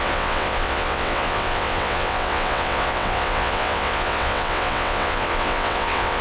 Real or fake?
fake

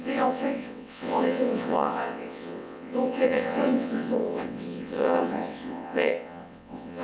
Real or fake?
fake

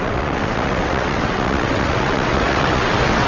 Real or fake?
fake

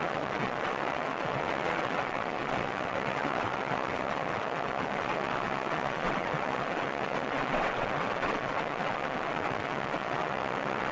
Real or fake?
fake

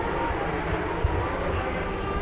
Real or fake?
real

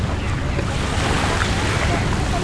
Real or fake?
real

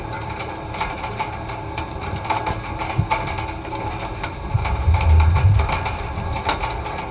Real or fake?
real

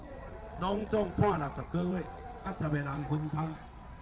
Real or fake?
fake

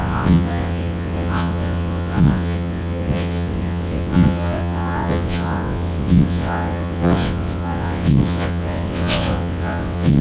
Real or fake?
fake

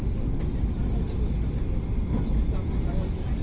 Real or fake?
real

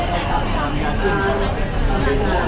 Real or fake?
real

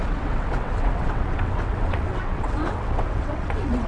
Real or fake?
fake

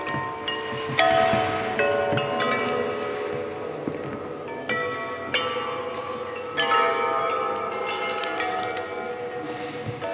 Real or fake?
real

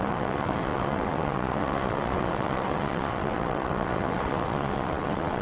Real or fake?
fake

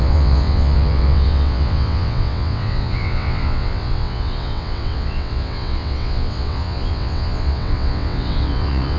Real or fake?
fake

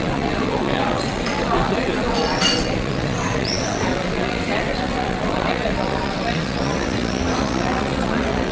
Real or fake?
fake